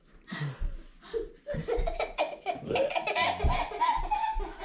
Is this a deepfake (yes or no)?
no